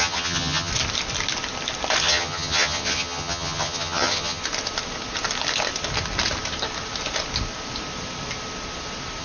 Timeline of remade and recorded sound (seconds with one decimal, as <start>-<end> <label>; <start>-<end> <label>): 0.0-0.7 remade; 0.7-2.0 recorded; 2.0-4.4 remade; 4.4-9.2 recorded